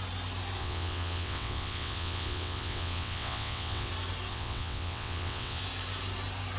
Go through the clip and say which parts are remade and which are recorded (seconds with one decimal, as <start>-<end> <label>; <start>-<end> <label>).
0.0-0.6 recorded; 0.6-3.9 remade; 3.9-4.3 recorded; 4.3-5.6 remade; 5.6-6.6 recorded